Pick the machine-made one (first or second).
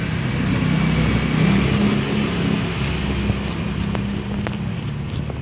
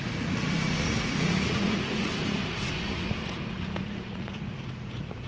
second